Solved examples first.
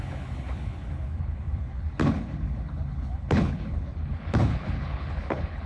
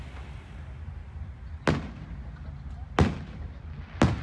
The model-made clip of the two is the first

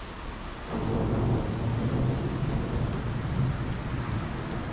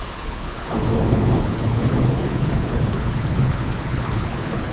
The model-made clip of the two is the second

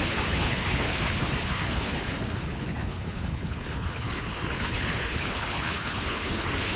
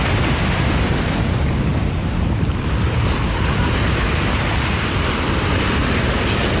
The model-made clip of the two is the first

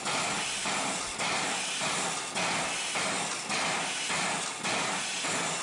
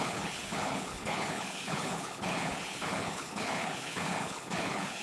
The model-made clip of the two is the second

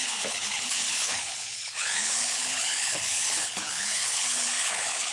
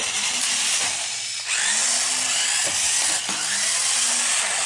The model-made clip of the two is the first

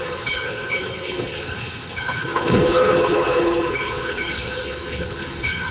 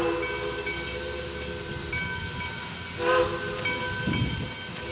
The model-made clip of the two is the first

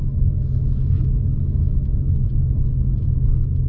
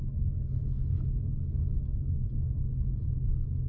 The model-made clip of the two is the second